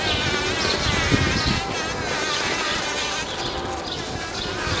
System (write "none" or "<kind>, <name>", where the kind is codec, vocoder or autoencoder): none